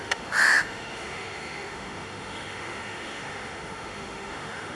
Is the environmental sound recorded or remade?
remade